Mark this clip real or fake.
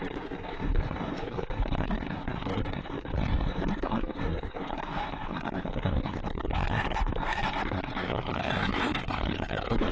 fake